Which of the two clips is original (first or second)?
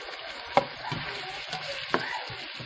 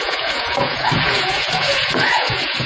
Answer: first